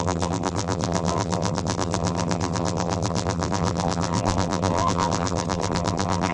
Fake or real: fake